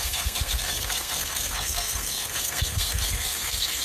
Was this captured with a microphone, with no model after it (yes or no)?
no